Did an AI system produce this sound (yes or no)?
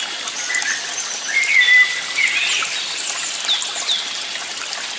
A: no